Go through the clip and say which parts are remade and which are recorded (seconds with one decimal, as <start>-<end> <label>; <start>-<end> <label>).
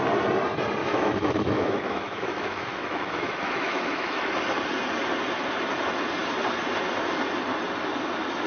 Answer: 0.0-0.8 recorded; 0.8-4.3 remade; 4.3-8.5 recorded